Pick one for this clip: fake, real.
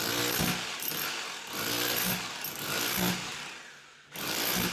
real